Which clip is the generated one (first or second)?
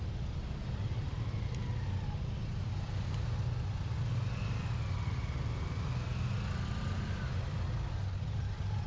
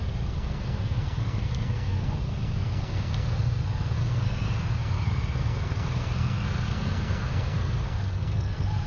second